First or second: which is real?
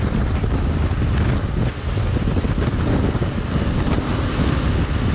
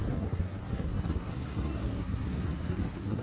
first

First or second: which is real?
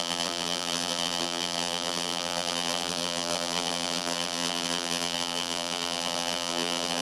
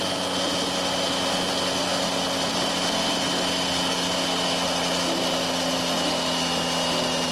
second